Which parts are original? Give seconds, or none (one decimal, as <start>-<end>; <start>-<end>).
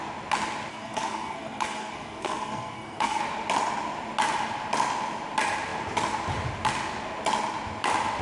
0.0-0.7; 3.2-8.2